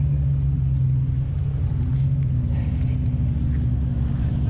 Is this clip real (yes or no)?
yes